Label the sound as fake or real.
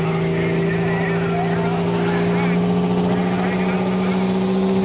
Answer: real